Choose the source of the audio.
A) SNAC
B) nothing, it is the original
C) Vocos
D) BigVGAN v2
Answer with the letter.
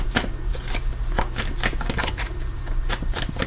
B